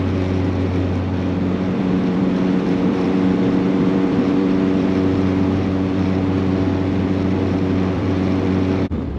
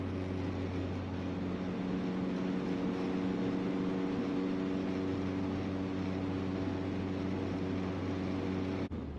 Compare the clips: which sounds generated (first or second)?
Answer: first